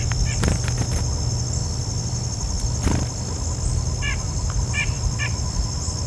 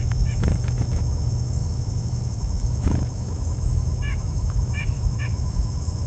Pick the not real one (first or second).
second